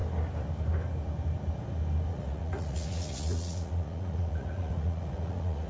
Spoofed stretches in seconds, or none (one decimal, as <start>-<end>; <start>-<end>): 2.1-5.7